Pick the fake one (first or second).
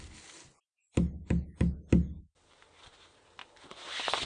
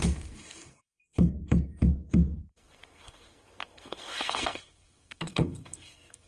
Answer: second